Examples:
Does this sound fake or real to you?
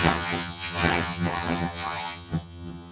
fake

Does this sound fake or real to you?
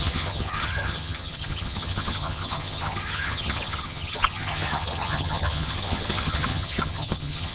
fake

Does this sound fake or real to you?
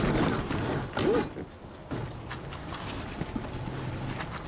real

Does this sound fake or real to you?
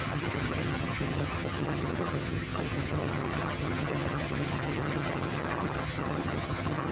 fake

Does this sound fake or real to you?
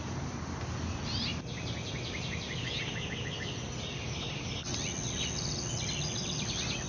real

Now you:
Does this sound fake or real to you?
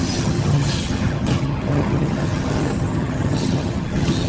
fake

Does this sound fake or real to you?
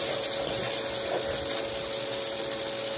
real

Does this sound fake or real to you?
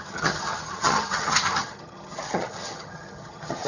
fake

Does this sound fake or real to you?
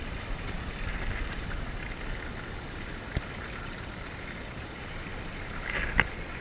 real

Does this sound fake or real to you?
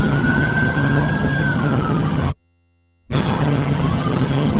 fake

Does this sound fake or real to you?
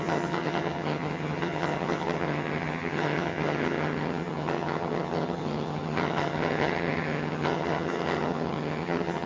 fake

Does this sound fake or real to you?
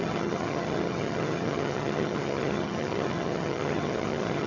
fake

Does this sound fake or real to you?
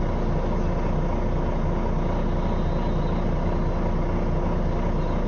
real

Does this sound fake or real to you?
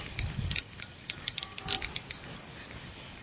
real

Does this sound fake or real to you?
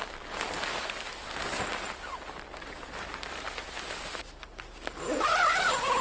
real